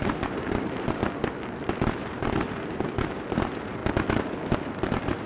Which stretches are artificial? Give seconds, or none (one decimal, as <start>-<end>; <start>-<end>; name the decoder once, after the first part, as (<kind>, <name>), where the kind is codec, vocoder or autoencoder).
0.0-1.0 (vocoder, BigVGAN v2); 1.7-3.8; 4.6-5.3